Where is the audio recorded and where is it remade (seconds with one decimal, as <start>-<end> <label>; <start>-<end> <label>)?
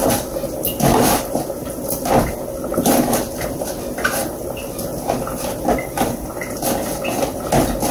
0.0-0.5 remade; 0.5-4.2 recorded; 4.2-6.3 remade; 6.3-7.9 recorded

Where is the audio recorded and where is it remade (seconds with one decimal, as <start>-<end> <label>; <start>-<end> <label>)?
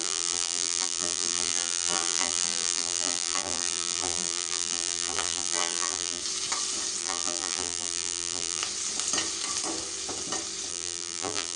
0.0-6.2 remade; 6.2-7.0 recorded; 7.0-8.6 remade; 8.6-10.7 recorded; 10.7-11.6 remade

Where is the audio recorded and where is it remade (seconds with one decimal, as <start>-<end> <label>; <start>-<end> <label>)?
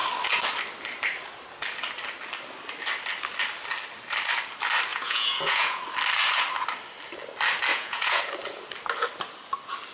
0.0-4.9 recorded; 4.9-5.8 remade; 5.8-7.7 recorded; 7.7-8.2 remade; 8.2-9.9 recorded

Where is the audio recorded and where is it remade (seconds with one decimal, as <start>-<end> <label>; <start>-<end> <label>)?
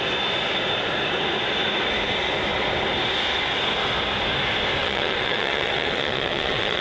0.0-4.8 recorded; 4.8-6.8 remade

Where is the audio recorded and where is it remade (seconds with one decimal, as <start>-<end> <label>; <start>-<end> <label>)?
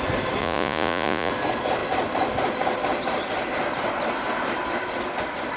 0.0-0.4 recorded; 0.4-1.3 remade; 1.3-5.6 recorded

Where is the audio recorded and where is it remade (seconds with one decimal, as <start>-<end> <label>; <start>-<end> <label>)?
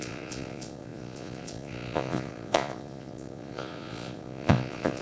0.0-5.0 remade